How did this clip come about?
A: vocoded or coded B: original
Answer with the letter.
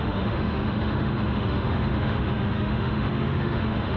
A